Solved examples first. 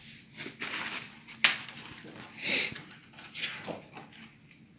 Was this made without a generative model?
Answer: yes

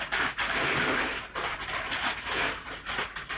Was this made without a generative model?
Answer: yes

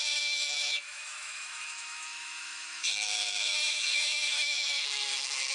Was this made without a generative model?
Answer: no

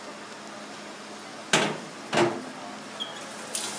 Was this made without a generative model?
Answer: yes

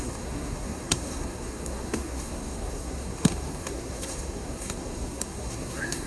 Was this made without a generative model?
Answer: no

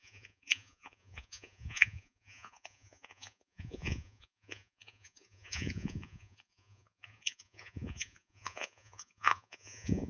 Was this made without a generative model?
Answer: no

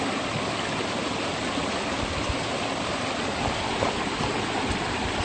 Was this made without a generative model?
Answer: yes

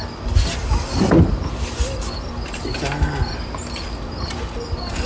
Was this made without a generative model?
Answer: yes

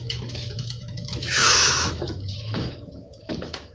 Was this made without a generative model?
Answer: no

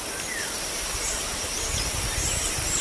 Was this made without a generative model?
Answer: no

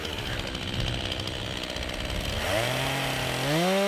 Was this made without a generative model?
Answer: yes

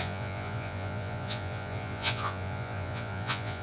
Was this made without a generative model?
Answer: no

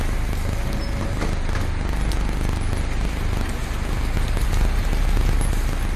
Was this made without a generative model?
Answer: yes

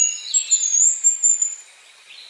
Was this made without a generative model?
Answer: yes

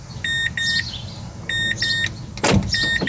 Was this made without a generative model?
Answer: yes